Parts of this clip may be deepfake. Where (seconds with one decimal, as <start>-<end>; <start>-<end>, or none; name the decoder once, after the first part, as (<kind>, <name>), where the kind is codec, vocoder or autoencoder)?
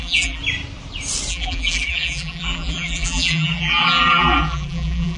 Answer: 0.0-0.4 (vocoder, BigVGAN v2); 1.3-5.2